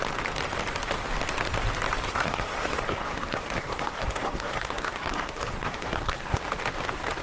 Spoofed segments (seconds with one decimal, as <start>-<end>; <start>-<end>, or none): 2.1-6.4